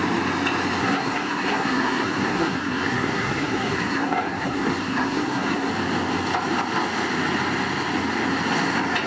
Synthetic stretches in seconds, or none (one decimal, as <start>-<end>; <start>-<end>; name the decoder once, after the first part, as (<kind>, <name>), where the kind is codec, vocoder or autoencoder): 0.8-5.7 (codec, SNAC)